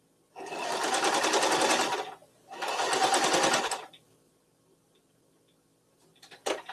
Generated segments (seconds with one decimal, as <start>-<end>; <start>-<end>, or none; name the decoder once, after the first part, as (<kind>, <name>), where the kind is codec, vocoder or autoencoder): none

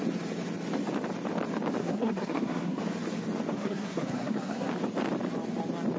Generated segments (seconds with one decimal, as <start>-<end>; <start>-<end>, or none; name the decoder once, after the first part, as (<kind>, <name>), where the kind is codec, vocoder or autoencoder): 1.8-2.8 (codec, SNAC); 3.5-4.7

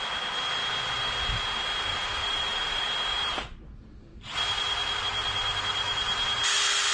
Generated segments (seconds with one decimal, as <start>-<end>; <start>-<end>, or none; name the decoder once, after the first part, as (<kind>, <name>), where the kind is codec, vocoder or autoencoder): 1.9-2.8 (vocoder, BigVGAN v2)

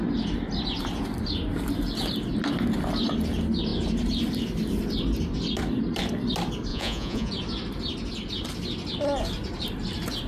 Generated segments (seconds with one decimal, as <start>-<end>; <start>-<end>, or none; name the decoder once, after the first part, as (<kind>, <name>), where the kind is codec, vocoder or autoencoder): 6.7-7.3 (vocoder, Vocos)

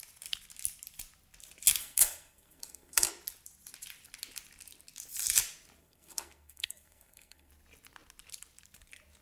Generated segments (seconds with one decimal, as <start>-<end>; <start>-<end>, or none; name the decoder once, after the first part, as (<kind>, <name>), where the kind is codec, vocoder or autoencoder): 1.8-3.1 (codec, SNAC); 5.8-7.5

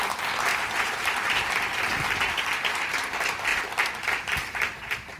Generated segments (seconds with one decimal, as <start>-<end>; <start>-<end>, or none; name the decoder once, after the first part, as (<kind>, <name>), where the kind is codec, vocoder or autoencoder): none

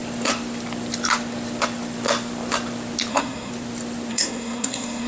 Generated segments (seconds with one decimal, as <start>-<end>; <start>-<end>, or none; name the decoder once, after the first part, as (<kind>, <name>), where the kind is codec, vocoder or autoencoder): 3.1-3.5 (codec, SNAC); 4.1-5.1